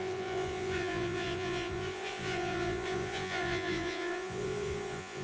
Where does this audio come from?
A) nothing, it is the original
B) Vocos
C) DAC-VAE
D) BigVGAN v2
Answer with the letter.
B